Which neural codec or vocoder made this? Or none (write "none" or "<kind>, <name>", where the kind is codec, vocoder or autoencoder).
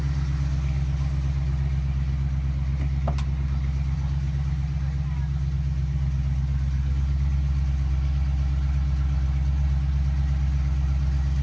none